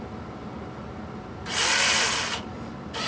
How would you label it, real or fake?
real